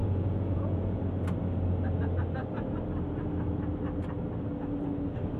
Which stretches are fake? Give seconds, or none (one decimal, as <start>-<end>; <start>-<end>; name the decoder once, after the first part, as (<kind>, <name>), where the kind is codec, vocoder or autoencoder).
0.0-1.0 (vocoder, Vocos)